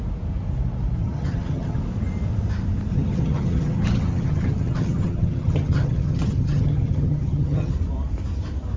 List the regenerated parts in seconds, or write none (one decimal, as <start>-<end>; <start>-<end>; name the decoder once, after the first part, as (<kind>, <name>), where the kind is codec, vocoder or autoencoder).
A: 1.0-1.8 (vocoder, HiFi-GAN); 2.9-7.7